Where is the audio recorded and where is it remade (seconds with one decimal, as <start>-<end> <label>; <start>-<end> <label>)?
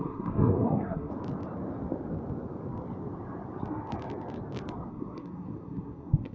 0.0-1.1 remade; 1.1-4.9 recorded; 4.9-6.3 remade